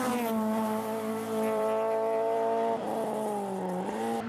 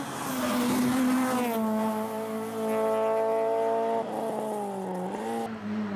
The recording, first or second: second